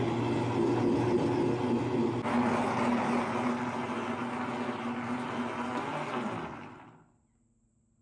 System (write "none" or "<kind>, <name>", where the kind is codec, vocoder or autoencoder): none